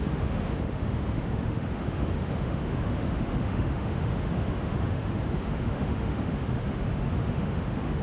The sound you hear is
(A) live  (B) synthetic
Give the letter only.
B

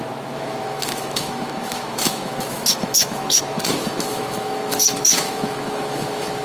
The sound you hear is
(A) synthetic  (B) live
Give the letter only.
A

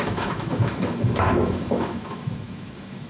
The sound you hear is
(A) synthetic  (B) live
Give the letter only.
A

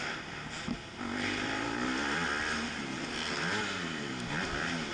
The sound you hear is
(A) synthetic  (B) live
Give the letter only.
B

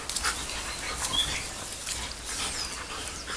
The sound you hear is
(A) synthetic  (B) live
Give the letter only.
B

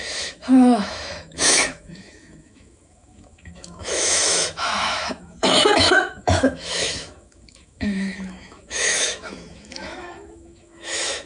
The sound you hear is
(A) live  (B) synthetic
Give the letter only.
B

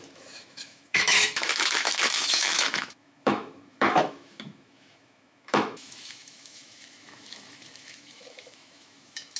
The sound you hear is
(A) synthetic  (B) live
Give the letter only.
A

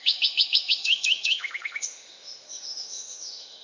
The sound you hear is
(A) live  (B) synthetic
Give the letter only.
B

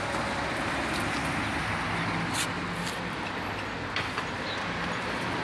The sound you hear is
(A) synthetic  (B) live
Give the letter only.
B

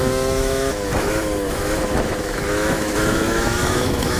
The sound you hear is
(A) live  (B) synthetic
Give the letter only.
B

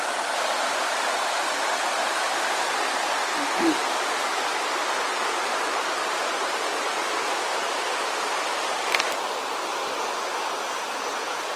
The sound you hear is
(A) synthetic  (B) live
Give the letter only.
B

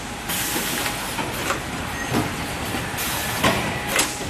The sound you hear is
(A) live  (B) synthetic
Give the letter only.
A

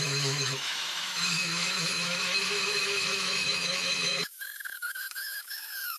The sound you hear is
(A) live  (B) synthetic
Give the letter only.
B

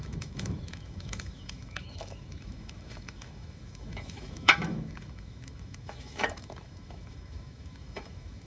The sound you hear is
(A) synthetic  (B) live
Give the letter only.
A